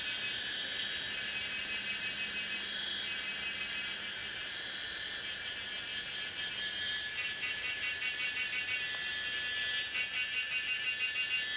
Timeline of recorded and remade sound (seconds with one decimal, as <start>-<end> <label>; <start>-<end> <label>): 0.0-5.9 recorded; 5.9-6.5 remade; 6.5-11.6 recorded